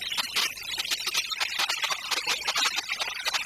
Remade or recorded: recorded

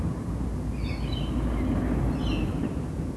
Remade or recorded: recorded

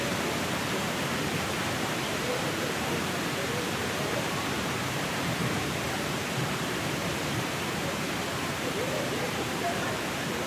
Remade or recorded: remade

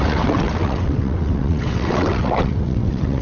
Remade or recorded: remade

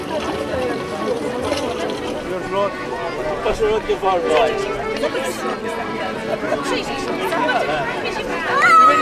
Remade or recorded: recorded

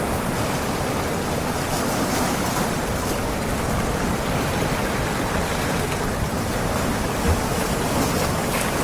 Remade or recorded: recorded